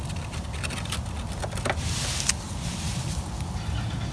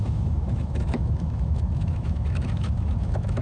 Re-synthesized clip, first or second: second